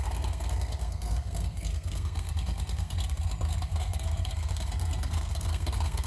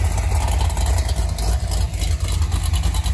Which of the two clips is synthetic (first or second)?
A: first